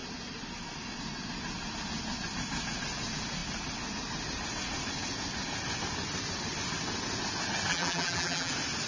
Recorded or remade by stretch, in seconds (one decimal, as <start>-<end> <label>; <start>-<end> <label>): 0.0-7.7 recorded; 7.7-8.5 remade; 8.5-8.9 recorded